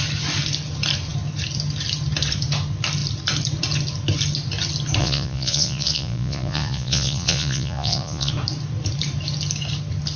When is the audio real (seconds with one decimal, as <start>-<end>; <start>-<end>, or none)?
0.0-5.0; 8.3-10.2